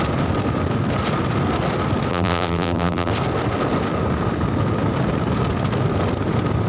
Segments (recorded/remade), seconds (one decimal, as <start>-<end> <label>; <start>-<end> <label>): 0.0-2.1 recorded; 2.1-3.1 remade; 3.1-6.7 recorded